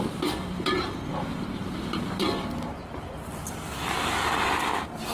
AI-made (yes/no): yes